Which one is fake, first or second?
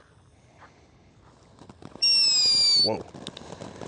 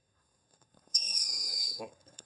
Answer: second